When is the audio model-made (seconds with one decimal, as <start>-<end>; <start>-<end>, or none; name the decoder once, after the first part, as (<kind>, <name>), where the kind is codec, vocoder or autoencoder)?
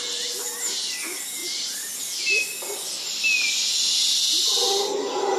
none